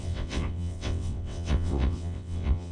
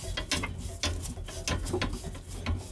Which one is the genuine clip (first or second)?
second